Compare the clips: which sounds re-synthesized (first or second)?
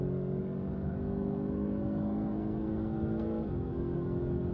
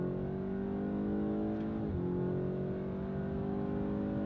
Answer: first